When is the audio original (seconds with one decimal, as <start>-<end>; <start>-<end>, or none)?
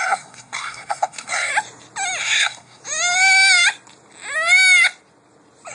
1.5-2.2; 2.8-5.7